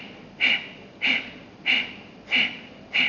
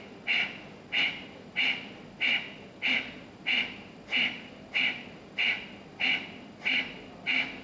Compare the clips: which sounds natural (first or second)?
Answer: second